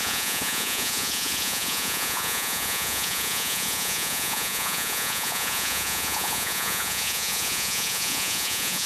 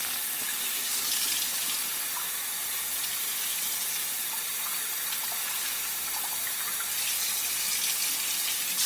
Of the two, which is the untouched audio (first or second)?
second